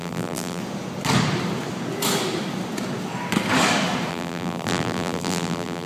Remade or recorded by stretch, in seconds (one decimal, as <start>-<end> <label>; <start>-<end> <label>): 0.0-0.6 remade; 0.6-4.1 recorded; 4.1-5.9 remade